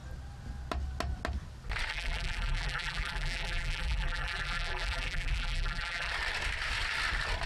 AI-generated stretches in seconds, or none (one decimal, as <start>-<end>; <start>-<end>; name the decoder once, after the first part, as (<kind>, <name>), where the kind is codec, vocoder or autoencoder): 1.9-6.1 (vocoder, BigVGAN v2)